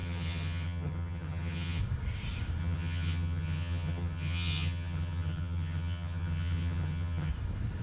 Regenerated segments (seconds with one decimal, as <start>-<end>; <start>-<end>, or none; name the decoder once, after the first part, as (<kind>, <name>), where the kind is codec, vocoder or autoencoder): 0.0-1.8 (vocoder, HiFi-GAN); 2.6-7.3